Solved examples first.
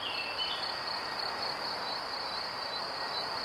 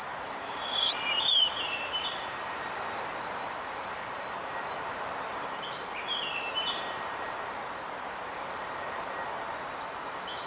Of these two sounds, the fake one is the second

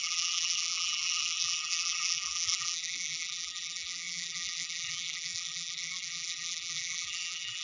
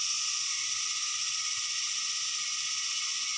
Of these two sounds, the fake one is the first